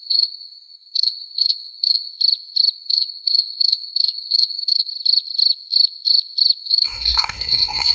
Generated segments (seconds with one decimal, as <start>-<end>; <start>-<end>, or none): 0.0-2.1; 2.7-4.9; 6.6-7.9